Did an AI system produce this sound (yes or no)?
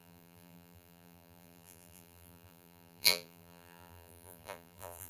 yes